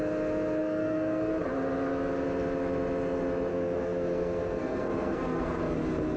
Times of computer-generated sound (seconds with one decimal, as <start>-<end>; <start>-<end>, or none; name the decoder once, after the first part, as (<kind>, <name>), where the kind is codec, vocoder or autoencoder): 0.6-1.3 (codec, SNAC); 3.5-5.6